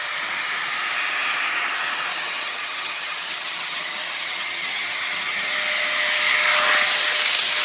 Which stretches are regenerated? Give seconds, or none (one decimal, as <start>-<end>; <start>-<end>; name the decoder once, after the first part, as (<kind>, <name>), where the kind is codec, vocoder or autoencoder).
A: 2.1-5.5 (vocoder, HiFi-GAN)